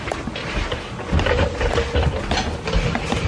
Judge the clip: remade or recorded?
recorded